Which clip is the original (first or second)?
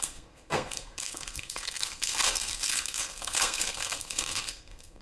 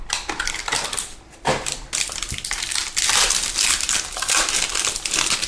second